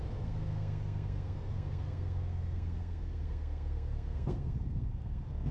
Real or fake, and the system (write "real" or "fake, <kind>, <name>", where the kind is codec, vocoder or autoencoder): fake, codec, SNAC